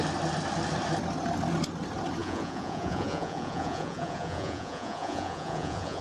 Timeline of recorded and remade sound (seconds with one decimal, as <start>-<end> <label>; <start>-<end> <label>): 0.0-2.2 recorded; 2.2-6.0 remade